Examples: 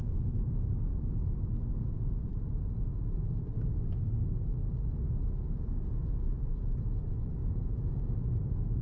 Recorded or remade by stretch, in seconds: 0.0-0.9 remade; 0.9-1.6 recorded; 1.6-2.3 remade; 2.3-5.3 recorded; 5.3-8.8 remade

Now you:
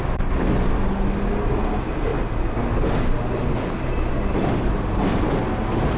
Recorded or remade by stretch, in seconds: 0.0-6.0 recorded

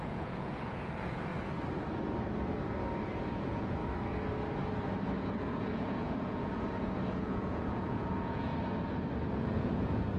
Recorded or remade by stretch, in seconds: 0.0-1.3 remade; 1.3-3.4 recorded; 3.4-3.8 remade; 3.8-5.6 recorded; 5.6-8.5 remade; 8.5-9.3 recorded; 9.3-10.2 remade

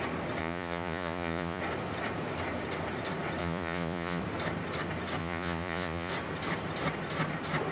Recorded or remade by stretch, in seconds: 0.0-0.4 recorded; 0.4-1.6 remade; 1.6-3.4 recorded; 3.4-4.2 remade; 4.2-5.2 recorded; 5.2-6.1 remade; 6.1-7.7 recorded

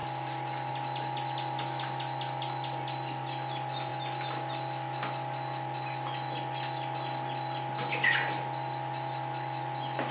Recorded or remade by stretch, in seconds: 0.0-10.1 recorded

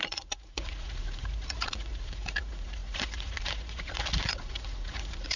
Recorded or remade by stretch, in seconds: 0.0-5.4 remade